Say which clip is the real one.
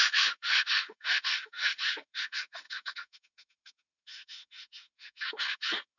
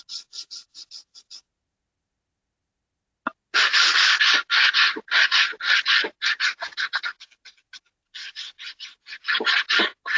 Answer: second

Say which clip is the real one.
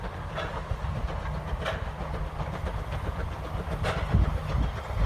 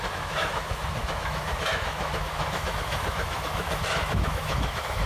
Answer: first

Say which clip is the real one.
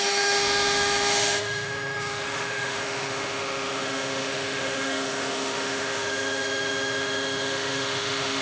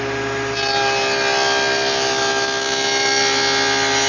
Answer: second